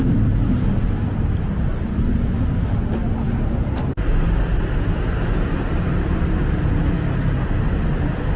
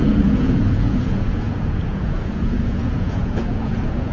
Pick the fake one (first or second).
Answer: second